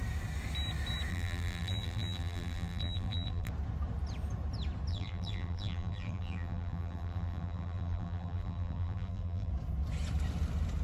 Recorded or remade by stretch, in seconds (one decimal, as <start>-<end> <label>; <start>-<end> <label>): 0.0-1.1 recorded; 1.1-3.5 remade; 3.5-4.9 recorded; 4.9-9.5 remade; 9.5-10.8 recorded

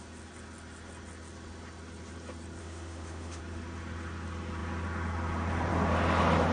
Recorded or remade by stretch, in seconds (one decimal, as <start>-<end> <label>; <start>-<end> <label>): 0.0-2.6 recorded; 2.6-3.4 remade; 3.4-6.5 recorded